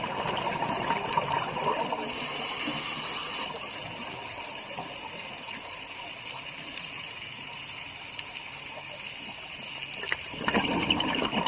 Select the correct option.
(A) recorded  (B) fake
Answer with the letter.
A